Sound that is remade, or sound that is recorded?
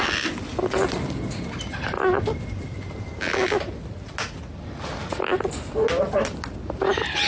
recorded